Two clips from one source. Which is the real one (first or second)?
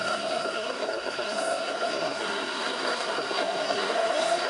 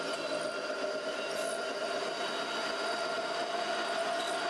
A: second